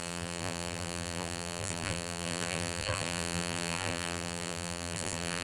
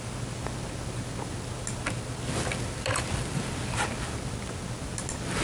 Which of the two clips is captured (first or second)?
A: second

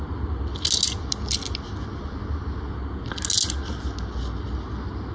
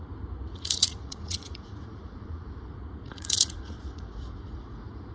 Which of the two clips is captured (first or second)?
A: first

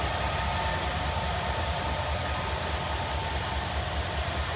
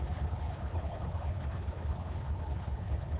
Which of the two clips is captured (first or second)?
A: first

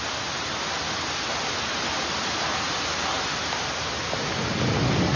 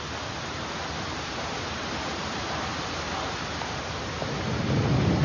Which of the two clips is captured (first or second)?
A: first